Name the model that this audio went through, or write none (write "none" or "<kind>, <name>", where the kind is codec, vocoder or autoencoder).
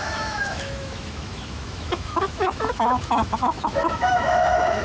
autoencoder, DAC-VAE